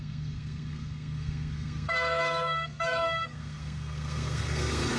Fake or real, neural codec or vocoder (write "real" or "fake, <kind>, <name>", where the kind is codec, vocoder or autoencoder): fake, codec, SNAC